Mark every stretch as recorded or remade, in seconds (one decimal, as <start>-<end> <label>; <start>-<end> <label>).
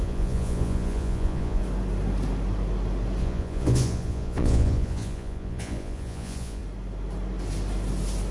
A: 0.0-1.6 remade; 1.6-3.2 recorded; 3.2-6.6 remade; 6.6-8.3 recorded